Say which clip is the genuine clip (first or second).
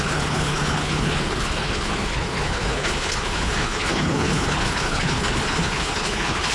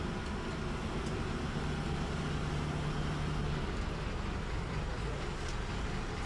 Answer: second